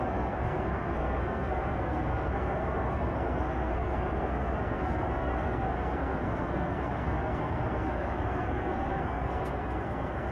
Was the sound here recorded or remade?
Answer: remade